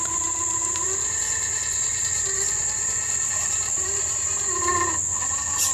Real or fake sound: real